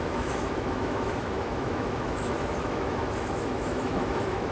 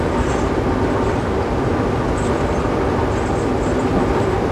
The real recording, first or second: second